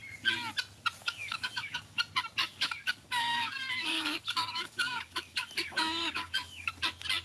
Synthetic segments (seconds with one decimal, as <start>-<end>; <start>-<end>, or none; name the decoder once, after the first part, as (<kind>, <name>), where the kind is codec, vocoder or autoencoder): 1.0-2.0 (codec, DAC); 2.4-6.7